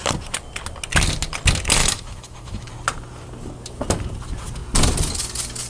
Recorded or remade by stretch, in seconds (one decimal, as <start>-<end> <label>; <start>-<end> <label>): 0.0-1.8 recorded; 1.8-2.7 remade; 2.7-5.7 recorded